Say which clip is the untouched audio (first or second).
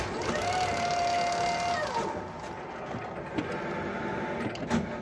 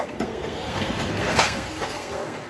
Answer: first